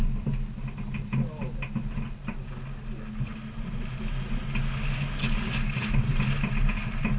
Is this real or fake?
real